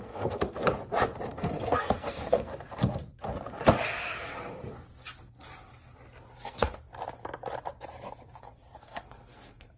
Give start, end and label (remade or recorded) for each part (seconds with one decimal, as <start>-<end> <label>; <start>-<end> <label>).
0.0-0.6 remade; 0.6-1.3 recorded; 1.3-2.5 remade; 2.5-6.4 recorded; 6.4-6.9 remade; 6.9-8.4 recorded; 8.4-9.8 remade